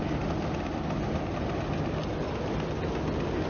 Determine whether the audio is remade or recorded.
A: recorded